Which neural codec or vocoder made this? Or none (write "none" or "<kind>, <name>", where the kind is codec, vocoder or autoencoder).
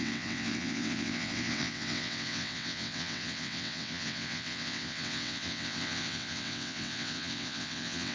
vocoder, WaveNeXt